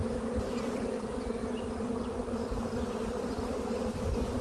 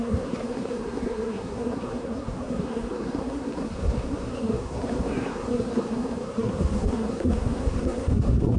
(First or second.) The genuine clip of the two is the first